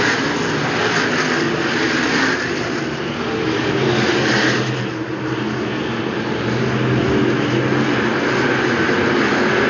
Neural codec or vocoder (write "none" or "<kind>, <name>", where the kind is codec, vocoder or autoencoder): none